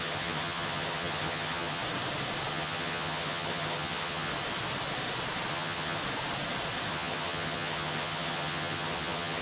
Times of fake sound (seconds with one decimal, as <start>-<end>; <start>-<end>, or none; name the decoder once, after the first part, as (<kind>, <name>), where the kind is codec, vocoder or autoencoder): 0.0-1.8 (vocoder, HiFi-GAN); 2.5-4.3; 5.5-6.0; 6.9-9.4